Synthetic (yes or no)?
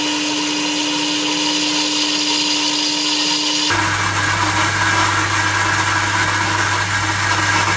no